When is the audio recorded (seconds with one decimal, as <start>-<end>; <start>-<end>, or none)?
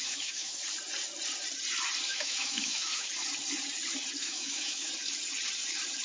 0.6-2.1; 3.1-4.2; 4.9-6.0